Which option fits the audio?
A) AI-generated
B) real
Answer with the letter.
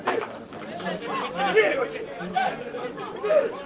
B